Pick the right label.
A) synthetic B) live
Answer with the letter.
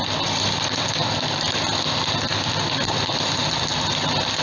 B